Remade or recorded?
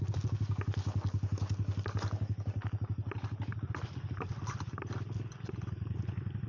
recorded